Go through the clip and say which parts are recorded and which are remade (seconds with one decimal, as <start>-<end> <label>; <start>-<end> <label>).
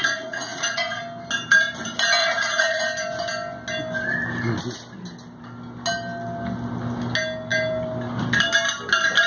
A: 0.0-1.0 remade; 1.0-2.2 recorded; 2.2-2.8 remade; 2.8-9.3 recorded